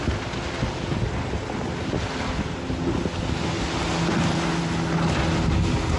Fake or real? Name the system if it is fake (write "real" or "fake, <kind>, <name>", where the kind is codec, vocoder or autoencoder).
real